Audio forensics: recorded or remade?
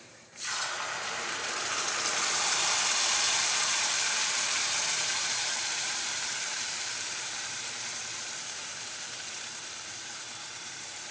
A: remade